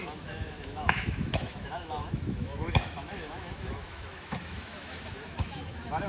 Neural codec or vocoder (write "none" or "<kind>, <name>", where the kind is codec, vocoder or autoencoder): autoencoder, DAC-VAE